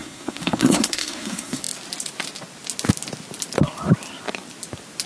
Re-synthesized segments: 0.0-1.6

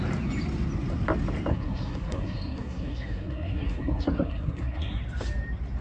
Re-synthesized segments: 1.5-5.0